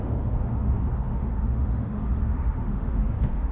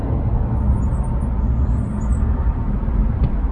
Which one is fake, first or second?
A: first